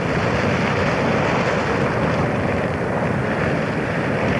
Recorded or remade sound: recorded